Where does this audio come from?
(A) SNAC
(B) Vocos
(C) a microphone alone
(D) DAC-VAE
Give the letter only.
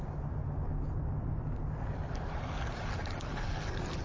C